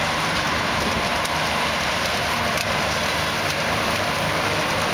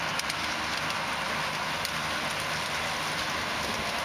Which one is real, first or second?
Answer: second